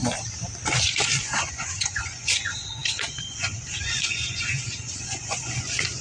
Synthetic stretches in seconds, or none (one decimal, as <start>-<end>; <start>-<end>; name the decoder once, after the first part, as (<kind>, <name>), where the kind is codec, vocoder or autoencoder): 1.2-6.0 (vocoder, Vocos)